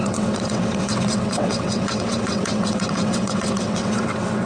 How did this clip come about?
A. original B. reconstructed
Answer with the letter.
B